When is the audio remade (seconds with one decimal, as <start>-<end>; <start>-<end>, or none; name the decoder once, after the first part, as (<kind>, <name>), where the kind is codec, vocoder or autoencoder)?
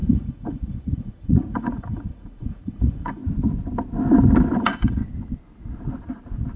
0.0-3.2 (vocoder, Vocos); 4.6-5.0